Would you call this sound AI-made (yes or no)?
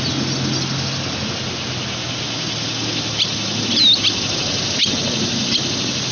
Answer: no